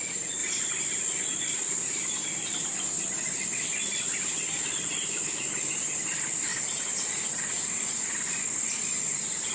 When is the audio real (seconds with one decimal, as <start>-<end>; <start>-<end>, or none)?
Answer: 0.0-9.5